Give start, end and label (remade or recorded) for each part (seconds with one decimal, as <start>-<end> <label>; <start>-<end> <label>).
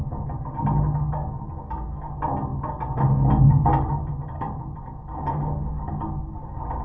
0.0-6.8 recorded